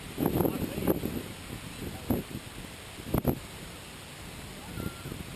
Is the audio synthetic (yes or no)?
no